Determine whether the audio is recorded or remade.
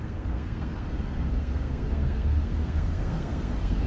remade